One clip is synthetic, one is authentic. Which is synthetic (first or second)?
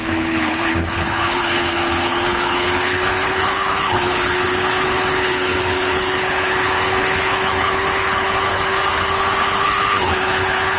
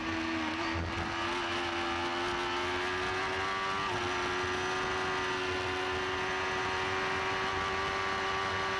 first